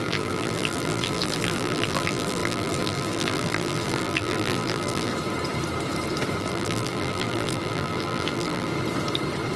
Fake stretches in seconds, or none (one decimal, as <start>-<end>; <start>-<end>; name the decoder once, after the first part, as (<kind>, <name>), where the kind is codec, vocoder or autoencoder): 0.0-5.1 (vocoder, BigVGAN v2); 6.4-8.7